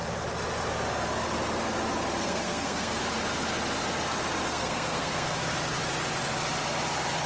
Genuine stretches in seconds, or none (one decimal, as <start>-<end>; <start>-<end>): 0.0-2.2; 3.0-4.5; 5.4-7.3